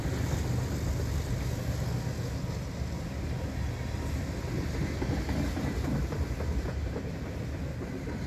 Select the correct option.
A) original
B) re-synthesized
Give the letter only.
A